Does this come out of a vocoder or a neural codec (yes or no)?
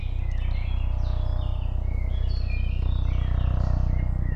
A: no